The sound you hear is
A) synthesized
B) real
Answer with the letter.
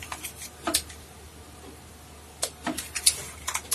B